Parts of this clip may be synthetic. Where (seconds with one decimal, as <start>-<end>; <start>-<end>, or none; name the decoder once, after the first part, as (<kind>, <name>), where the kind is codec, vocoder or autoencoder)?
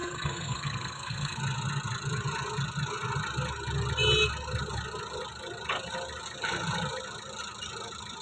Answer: 0.0-1.4 (codec, SNAC)